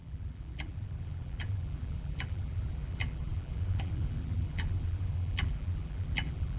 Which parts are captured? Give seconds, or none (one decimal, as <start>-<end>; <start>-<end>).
none